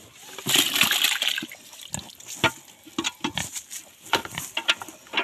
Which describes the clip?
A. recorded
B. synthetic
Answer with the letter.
A